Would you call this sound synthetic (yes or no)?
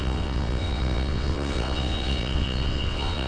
yes